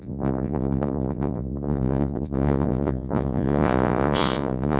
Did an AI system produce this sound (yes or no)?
yes